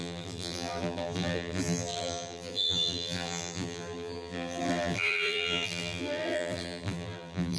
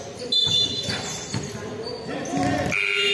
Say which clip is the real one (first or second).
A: second